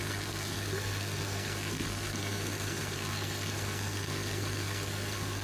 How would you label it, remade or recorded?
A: remade